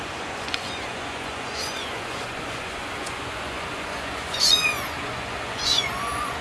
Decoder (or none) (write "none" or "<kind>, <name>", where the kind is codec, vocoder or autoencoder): vocoder, Vocos